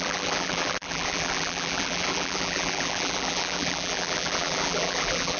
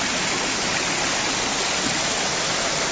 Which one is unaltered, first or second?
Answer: second